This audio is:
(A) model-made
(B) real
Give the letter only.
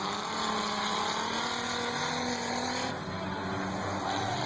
B